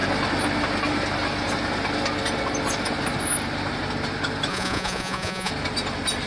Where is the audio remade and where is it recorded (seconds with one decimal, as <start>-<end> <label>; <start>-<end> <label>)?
0.0-4.5 recorded; 4.5-5.5 remade; 5.5-6.3 recorded